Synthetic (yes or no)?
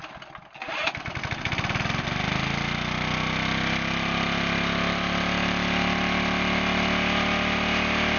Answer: no